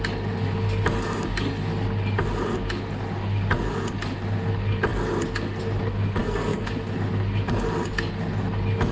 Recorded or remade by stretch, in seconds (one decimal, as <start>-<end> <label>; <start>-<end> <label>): 0.0-6.2 recorded; 6.2-6.7 remade; 6.7-8.9 recorded